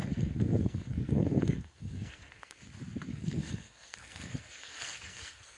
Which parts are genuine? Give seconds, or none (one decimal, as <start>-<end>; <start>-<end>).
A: 2.6-3.1